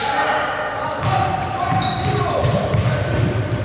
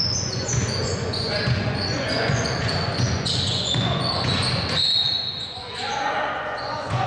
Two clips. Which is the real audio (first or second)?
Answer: first